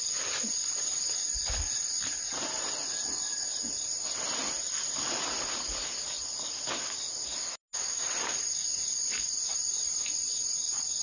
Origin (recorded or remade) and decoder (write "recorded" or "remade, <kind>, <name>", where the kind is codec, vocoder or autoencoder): recorded